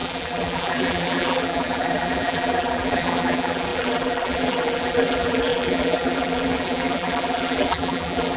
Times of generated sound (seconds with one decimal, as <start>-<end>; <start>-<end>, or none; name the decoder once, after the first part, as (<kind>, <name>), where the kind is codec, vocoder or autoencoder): 0.0-8.4 (vocoder, BigVGAN v2)